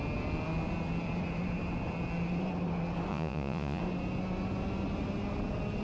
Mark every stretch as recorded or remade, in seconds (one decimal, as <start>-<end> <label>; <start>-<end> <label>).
0.0-3.1 recorded; 3.1-3.8 remade; 3.8-5.8 recorded